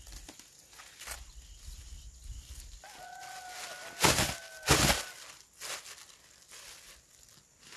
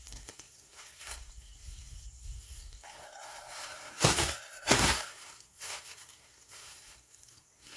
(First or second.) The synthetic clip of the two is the second